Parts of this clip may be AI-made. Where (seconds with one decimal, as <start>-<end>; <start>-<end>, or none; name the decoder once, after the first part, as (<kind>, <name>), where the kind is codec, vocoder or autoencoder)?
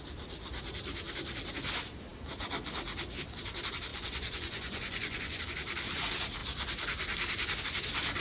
3.9-5.4 (vocoder, Vocos)